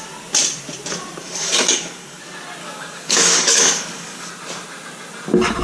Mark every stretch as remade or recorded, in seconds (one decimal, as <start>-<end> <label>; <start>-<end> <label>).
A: 0.0-1.2 recorded; 1.2-2.2 remade; 2.2-2.6 recorded; 2.6-4.3 remade; 4.3-5.6 recorded